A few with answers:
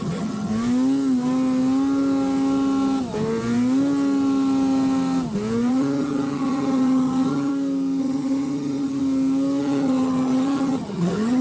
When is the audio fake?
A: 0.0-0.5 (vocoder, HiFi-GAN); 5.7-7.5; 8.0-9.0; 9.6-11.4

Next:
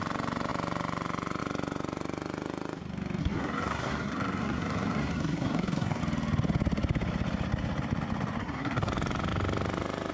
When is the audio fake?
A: 3.2-6.0 (codec, SNAC); 8.4-8.9

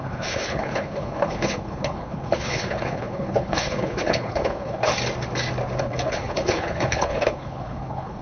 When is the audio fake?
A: 0.0-4.9 (codec, HILCodec); 5.8-8.2

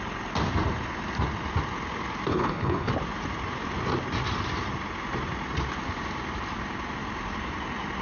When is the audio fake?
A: 2.3-2.9 (codec, HILCodec)

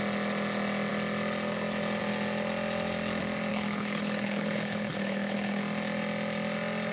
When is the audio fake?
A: 3.5-5.6 (codec, HILCodec)

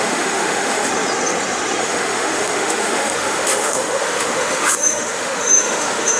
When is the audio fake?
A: 0.0-0.9 (autoencoder, DAC-VAE); 1.8-6.2

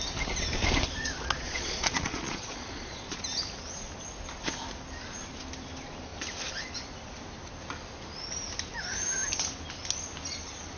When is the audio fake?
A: 1.0-3.2 (vocoder, Vocos)

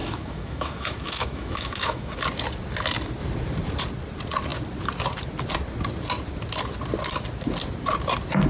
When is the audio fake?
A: 0.0-2.1 (autoencoder, DAC-VAE)